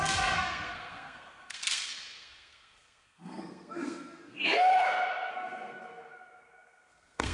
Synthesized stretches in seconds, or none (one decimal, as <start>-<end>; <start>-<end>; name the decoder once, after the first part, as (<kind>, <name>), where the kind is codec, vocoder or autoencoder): 0.0-4.7 (codec, SNAC); 5.3-7.3